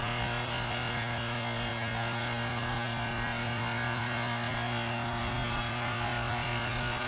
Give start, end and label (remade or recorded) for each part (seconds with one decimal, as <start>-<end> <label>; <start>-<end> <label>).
0.0-7.1 recorded

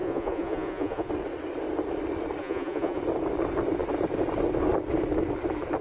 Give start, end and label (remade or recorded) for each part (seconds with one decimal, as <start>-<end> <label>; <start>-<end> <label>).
0.0-1.1 remade; 1.1-2.4 recorded; 2.4-3.0 remade; 3.0-5.8 recorded

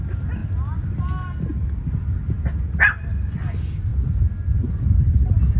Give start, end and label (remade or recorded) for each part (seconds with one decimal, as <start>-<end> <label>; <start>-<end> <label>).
0.0-5.6 recorded

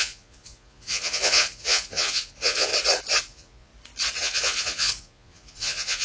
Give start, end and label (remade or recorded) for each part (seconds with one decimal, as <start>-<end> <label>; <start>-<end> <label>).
0.0-2.7 remade; 2.7-3.2 recorded; 3.2-3.7 remade; 3.7-4.2 recorded; 4.2-6.0 remade

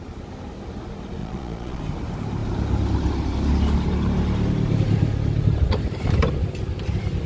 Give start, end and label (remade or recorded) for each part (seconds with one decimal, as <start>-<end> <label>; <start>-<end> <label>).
0.0-1.2 recorded; 1.2-1.8 remade; 1.8-7.3 recorded

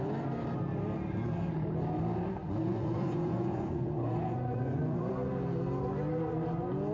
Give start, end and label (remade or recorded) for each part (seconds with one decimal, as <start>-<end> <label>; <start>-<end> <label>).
0.0-2.4 recorded; 2.4-5.1 remade; 5.1-6.9 recorded

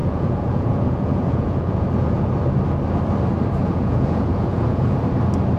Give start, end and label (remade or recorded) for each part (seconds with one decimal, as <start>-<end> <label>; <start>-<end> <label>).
0.0-2.3 remade; 2.3-3.6 recorded; 3.6-5.0 remade; 5.0-5.6 recorded